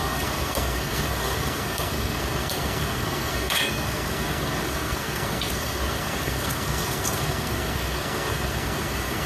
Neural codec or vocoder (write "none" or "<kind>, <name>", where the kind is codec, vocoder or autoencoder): codec, SNAC